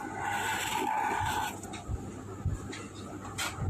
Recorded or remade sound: recorded